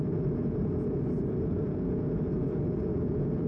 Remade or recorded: remade